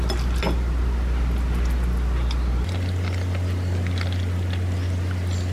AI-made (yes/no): no